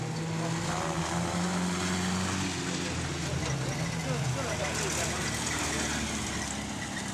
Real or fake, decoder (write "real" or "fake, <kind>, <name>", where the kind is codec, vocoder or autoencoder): real